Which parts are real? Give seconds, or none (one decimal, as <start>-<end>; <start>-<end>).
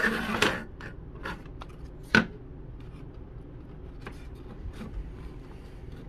0.0-6.1